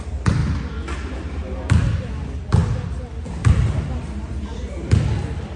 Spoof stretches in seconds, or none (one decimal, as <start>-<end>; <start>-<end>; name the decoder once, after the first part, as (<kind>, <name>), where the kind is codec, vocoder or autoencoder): 0.0-0.4 (vocoder, BigVGAN v2); 2.0-5.6